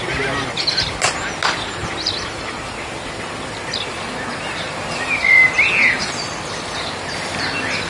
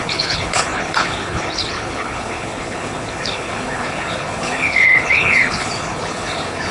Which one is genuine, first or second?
first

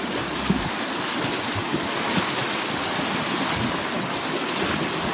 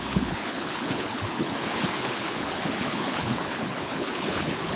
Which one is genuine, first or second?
first